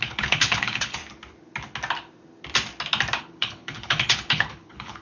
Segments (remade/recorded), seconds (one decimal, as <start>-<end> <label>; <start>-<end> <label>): 0.0-1.0 remade; 1.0-3.2 recorded; 3.2-5.0 remade